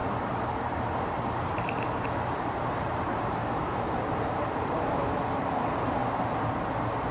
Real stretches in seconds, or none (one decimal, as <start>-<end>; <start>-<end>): 6.0-7.1